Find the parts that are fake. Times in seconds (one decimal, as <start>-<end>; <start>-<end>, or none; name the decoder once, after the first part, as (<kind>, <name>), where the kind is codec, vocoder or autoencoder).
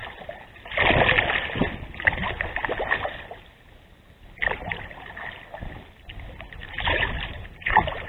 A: 6.6-8.1 (vocoder, BigVGAN v2)